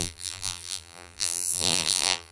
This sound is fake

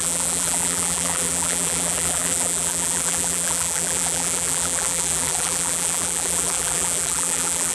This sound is fake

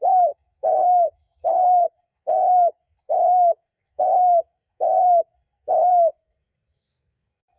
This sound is fake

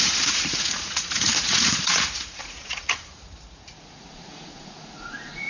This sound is fake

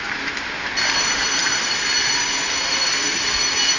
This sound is real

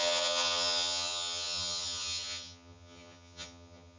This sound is fake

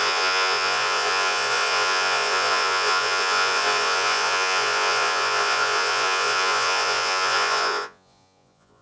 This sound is fake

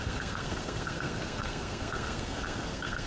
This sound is fake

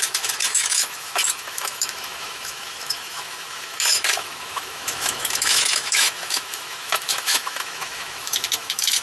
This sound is fake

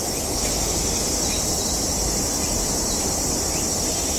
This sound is real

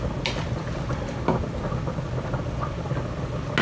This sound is real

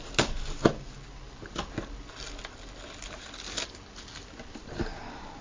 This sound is real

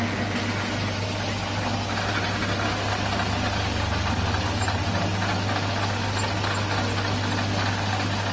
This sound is real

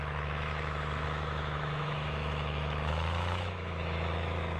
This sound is fake